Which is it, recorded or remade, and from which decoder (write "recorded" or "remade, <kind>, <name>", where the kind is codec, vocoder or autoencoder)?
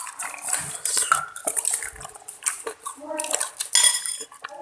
recorded